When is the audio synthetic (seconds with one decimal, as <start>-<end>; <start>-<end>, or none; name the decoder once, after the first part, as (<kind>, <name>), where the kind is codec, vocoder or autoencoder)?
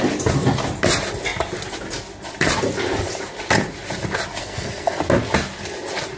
4.4-5.0 (codec, SNAC)